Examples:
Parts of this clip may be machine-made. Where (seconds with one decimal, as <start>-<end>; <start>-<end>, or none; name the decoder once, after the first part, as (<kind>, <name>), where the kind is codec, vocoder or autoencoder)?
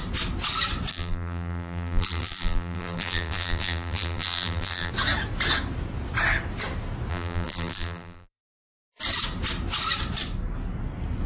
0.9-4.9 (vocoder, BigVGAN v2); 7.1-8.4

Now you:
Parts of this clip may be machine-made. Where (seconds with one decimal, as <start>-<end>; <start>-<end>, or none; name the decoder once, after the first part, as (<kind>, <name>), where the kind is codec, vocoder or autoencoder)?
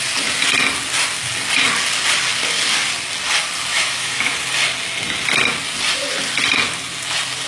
3.7-4.3 (autoencoder, DAC-VAE)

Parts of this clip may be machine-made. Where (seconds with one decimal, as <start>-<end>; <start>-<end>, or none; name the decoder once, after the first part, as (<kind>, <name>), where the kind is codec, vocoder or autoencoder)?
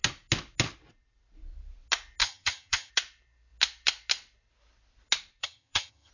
2.2-2.9 (vocoder, HiFi-GAN); 5.4-6.1